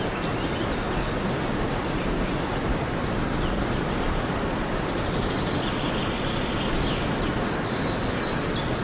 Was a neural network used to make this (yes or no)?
no